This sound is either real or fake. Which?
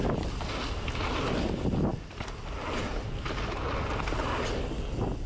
real